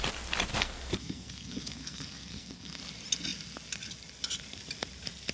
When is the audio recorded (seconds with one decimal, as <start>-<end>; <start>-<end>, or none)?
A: 0.0-0.5; 2.8-5.3